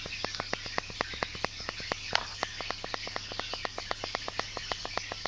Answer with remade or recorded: recorded